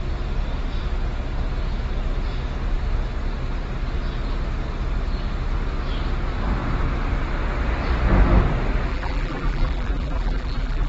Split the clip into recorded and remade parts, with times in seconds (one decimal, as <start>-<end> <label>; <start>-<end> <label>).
0.0-8.9 recorded; 8.9-10.9 remade